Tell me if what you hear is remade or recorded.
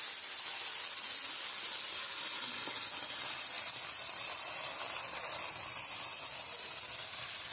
recorded